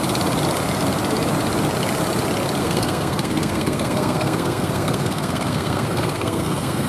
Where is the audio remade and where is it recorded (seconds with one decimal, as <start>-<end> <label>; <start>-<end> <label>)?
0.0-2.6 recorded; 2.6-6.9 remade